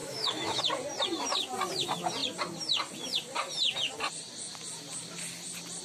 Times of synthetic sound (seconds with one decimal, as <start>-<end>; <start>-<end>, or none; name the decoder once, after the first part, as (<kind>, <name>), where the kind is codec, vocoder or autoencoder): 0.0-0.6 (autoencoder, DAC-VAE)